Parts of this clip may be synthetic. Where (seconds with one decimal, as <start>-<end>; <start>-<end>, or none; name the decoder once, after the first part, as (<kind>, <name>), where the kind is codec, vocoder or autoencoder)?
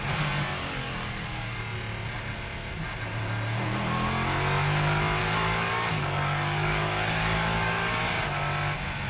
0.6-1.6 (codec, DAC); 5.2-8.0